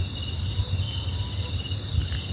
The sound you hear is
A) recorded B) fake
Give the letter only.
A